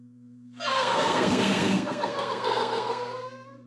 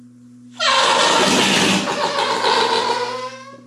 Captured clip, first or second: second